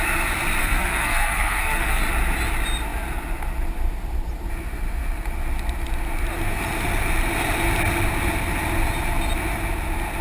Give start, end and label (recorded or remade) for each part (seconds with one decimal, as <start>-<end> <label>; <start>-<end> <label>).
0.0-0.6 recorded; 0.6-2.0 remade; 2.0-10.2 recorded